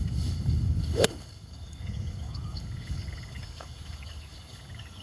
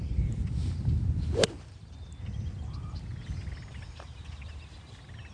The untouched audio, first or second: second